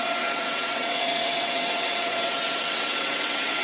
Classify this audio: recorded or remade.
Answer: remade